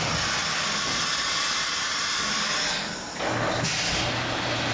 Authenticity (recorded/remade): recorded